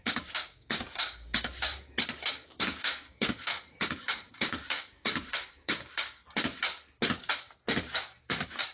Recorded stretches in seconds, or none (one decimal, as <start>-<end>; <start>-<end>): 1.7-2.3; 6.2-8.2